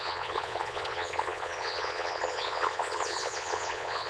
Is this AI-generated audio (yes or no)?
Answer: yes